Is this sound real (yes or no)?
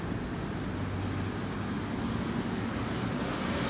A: yes